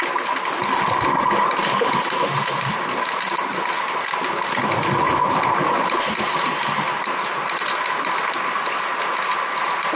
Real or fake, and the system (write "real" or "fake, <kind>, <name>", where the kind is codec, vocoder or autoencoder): real